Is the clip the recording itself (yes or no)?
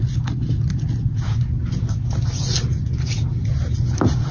yes